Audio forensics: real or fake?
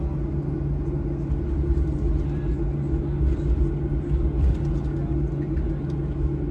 real